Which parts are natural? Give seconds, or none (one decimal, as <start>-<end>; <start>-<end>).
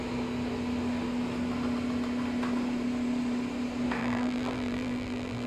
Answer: 0.0-4.0